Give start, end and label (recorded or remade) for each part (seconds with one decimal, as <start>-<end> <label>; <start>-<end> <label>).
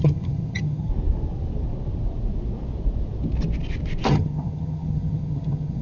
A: 0.0-0.9 remade; 0.9-4.1 recorded; 4.1-5.8 remade